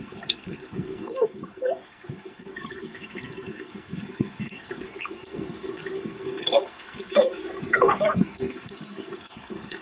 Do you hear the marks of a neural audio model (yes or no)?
yes